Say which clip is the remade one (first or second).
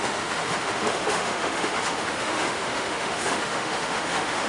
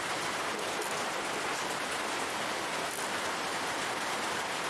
first